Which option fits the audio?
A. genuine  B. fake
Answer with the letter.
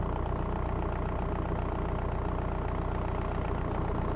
A